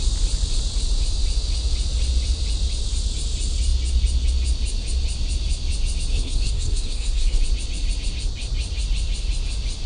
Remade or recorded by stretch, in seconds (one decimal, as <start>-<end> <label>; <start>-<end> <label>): 0.0-6.1 recorded; 6.1-7.4 remade; 7.4-9.9 recorded